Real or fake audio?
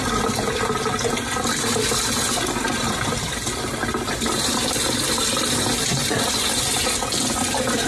real